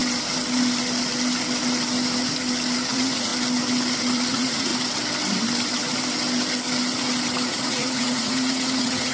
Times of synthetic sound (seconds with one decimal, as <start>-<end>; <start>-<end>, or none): 2.9-3.3; 4.3-4.7; 7.5-9.1